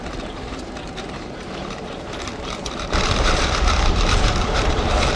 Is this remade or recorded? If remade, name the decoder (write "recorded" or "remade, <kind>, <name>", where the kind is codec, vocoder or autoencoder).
remade, vocoder, BigVGAN v2